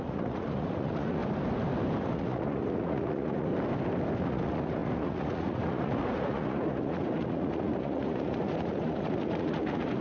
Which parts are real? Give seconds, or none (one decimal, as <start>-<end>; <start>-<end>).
1.2-2.0; 3.5-4.2